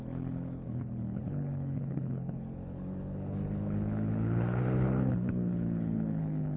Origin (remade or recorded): remade